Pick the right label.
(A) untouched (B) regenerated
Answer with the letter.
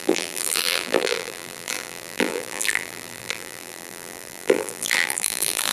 B